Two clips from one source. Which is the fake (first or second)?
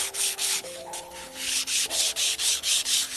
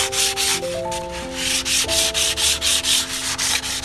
first